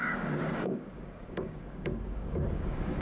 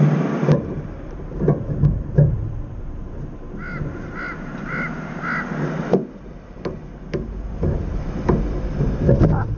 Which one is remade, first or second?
first